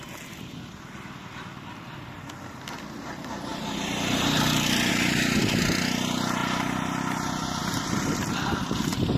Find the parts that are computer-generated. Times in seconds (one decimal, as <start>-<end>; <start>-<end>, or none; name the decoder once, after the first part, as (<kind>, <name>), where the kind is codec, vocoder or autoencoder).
3.5-4.9 (vocoder, BigVGAN v2); 6.4-7.0; 7.6-8.6